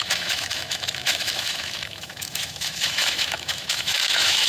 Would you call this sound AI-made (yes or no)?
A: yes